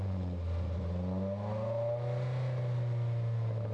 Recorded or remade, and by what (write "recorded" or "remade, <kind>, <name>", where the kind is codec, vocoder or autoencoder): recorded